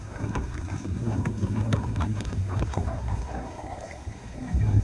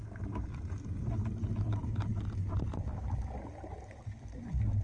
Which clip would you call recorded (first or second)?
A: second